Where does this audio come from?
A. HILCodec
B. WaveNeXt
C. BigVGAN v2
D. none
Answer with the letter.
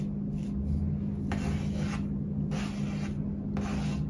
D